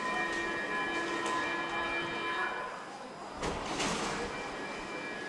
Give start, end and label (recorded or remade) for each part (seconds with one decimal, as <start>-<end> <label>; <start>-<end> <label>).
0.0-5.3 recorded